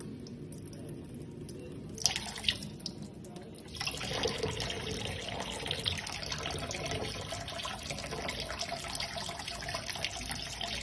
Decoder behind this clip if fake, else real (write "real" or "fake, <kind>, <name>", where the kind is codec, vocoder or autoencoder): real